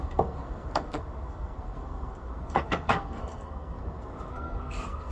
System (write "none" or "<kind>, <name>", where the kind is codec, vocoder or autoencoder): codec, SNAC